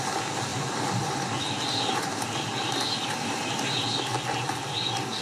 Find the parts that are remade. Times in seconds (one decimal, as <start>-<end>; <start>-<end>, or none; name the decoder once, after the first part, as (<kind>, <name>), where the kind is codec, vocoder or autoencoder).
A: 0.0-5.2 (vocoder, BigVGAN v2)

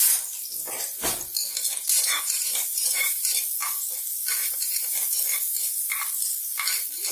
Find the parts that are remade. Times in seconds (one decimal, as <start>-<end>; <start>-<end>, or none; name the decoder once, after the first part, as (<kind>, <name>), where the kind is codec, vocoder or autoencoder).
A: 1.7-3.4 (vocoder, BigVGAN v2); 4.4-4.9

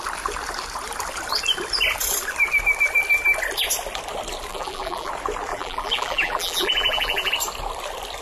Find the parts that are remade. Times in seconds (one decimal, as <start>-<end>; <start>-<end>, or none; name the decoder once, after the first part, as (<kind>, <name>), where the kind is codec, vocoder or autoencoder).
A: 4.5-5.1 (vocoder, BigVGAN v2); 5.5-7.3

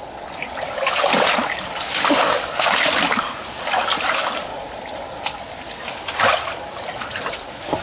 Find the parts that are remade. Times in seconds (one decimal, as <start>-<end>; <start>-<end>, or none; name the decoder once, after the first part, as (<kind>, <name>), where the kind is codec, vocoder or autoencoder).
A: 4.5-5.2 (vocoder, BigVGAN v2)

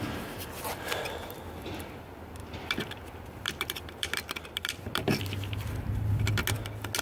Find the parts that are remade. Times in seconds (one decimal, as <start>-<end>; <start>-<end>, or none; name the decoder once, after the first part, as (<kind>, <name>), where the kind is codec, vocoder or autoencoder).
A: 0.0-6.4 (vocoder, BigVGAN v2)

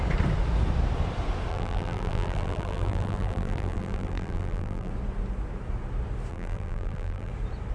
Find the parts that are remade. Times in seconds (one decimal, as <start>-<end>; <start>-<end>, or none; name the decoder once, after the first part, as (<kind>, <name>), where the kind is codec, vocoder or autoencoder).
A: 1.5-4.9 (vocoder, BigVGAN v2); 6.3-7.3

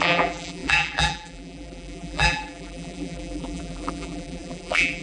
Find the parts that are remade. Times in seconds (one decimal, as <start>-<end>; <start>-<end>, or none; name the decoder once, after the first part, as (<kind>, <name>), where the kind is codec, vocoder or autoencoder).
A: 0.0-5.0 (vocoder, BigVGAN v2)

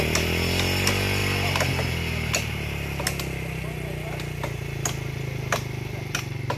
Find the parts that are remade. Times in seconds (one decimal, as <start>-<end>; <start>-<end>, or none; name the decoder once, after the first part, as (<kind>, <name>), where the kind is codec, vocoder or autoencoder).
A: none